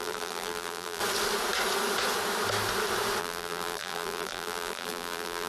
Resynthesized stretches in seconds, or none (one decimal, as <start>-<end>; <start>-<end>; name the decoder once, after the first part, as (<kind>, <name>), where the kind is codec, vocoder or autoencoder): 0.0-1.0 (vocoder, BigVGAN v2); 3.2-5.5